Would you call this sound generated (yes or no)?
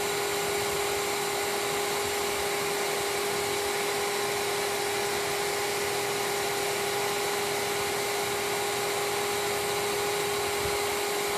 no